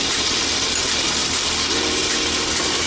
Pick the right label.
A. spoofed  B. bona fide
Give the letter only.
B